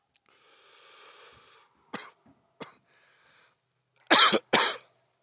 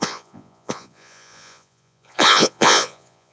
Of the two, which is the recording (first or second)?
first